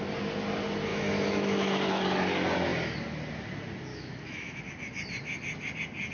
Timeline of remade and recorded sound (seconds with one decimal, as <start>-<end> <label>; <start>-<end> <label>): 0.0-0.9 recorded; 0.9-2.0 remade; 2.0-3.9 recorded; 3.9-4.6 remade; 4.6-6.1 recorded